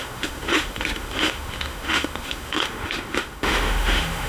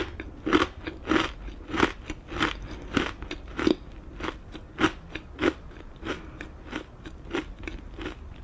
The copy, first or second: first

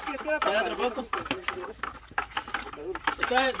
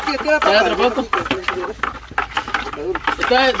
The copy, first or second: first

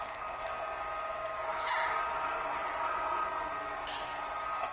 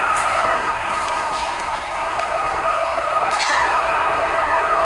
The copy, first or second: second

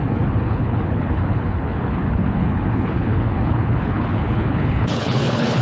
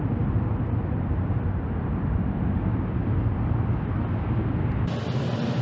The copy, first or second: first